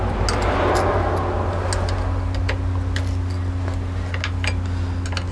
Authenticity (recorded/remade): recorded